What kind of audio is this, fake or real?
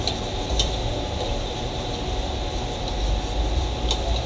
real